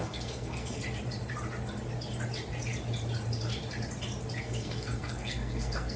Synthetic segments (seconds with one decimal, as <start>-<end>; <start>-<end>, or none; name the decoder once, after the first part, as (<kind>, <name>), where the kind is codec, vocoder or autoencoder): 0.0-0.8 (codec, SNAC); 4.4-6.0

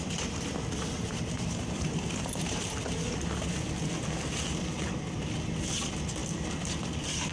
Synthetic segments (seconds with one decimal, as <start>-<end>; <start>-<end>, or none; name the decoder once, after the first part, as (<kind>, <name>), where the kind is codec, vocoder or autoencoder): none

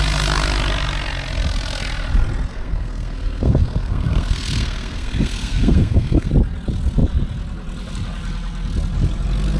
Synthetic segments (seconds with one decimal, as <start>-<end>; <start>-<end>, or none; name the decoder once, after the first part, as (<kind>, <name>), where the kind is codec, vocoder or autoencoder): 2.5-6.3 (codec, SNAC)

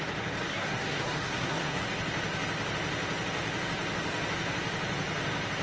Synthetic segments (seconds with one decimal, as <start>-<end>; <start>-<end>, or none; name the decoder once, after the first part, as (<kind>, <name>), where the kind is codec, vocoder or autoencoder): 0.5-1.8 (codec, SNAC)

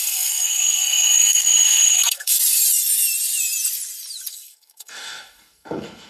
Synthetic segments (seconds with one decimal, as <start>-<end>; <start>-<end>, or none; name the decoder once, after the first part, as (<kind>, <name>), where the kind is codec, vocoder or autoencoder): 0.0-2.4 (codec, SNAC); 4.3-6.1

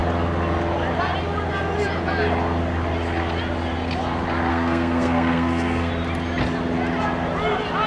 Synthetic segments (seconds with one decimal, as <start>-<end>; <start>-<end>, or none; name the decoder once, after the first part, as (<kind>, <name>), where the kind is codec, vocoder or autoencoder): 4.5-5.9 (codec, SNAC)